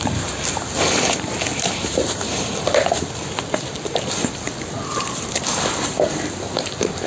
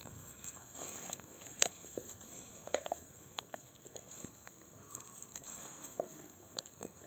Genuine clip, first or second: first